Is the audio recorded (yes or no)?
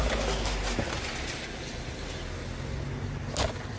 yes